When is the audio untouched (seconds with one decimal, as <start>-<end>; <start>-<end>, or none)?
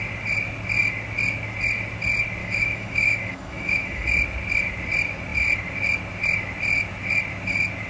0.0-2.4; 4.1-7.9